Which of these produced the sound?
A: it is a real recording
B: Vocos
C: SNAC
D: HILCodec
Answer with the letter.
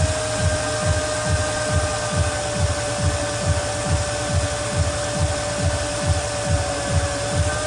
A